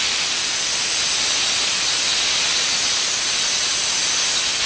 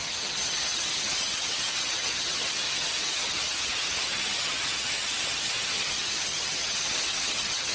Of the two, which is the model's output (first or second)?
second